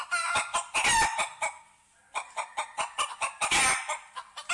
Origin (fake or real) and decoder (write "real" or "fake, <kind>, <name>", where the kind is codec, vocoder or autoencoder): real